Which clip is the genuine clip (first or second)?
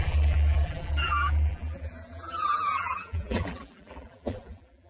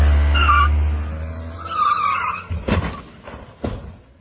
second